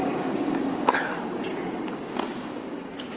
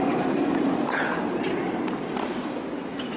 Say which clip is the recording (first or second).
second